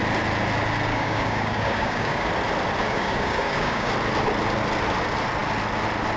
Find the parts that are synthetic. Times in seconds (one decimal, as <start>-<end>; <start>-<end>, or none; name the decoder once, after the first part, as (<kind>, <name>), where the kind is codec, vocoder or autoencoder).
0.9-2.3 (codec, DAC); 2.8-3.9